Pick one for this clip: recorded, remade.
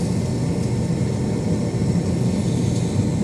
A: recorded